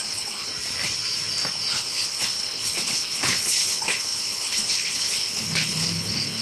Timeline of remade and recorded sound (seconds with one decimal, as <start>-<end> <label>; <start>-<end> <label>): 0.0-0.5 remade; 0.5-1.7 recorded; 1.7-6.4 remade

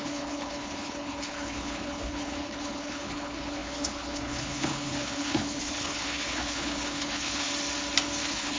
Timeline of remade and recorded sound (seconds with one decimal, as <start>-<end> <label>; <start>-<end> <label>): 0.0-7.5 remade; 7.5-8.2 recorded; 8.2-8.6 remade

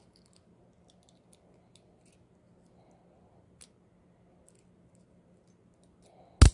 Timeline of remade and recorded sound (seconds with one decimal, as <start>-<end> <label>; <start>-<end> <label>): 0.0-6.5 recorded

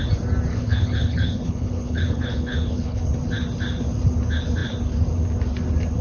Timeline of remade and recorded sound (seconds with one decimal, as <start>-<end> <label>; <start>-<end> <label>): 0.0-0.5 recorded; 0.5-3.1 remade; 3.1-6.0 recorded

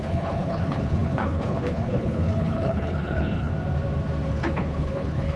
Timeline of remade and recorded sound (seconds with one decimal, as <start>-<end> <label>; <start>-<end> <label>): 0.0-3.5 remade; 3.5-4.3 recorded; 4.3-5.4 remade

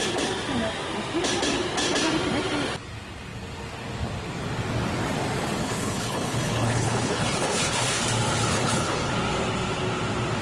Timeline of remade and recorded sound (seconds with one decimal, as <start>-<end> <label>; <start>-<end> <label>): 0.0-5.6 recorded; 5.6-8.0 remade; 8.0-8.5 recorded; 8.5-9.1 remade; 9.1-10.4 recorded